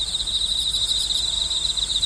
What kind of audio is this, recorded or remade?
recorded